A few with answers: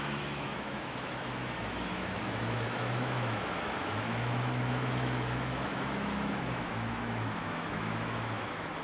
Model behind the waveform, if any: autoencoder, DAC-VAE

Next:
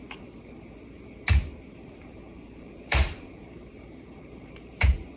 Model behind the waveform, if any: vocoder, BigVGAN v2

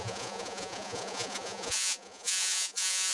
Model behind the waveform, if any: vocoder, Vocos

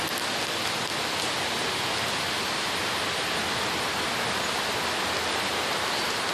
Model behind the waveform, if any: none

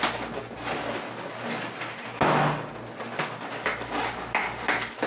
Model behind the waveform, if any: none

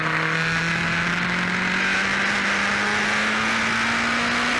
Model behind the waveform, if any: none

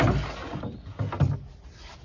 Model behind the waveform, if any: none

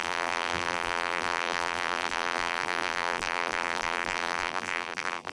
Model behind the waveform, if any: vocoder, BigVGAN v2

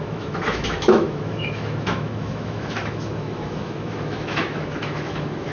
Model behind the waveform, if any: autoencoder, DAC-VAE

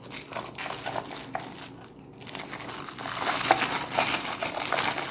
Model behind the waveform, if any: none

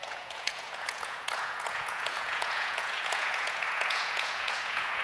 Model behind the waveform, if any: vocoder, Vocos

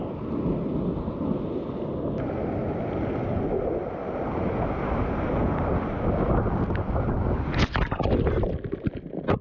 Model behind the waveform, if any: none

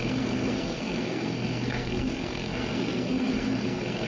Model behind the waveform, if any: codec, SNAC